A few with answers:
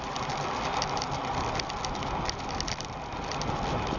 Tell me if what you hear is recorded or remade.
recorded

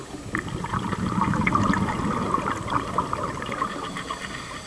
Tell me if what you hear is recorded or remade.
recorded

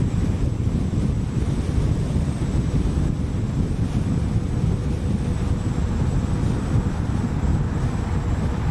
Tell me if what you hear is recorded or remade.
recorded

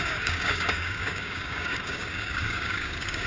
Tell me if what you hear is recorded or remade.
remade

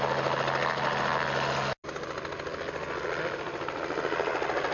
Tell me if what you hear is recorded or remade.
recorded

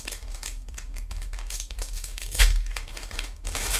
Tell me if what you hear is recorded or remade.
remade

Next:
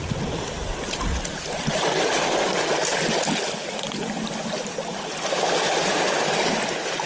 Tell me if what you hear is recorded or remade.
recorded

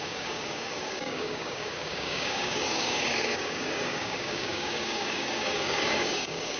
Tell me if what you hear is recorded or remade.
remade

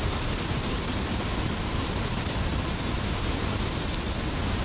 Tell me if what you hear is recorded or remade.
recorded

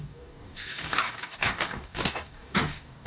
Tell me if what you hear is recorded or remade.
remade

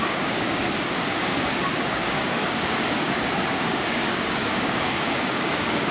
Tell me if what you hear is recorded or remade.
remade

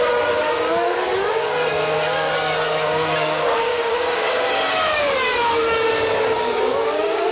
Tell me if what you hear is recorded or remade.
remade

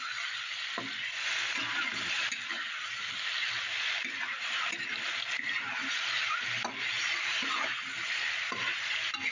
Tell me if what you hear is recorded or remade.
recorded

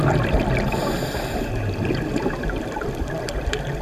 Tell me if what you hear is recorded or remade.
recorded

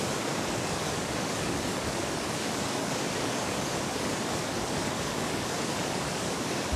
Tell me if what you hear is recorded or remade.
remade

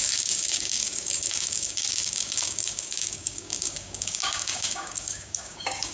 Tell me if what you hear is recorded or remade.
remade